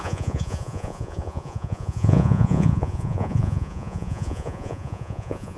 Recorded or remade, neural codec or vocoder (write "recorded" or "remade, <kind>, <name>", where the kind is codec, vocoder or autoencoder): remade, vocoder, Vocos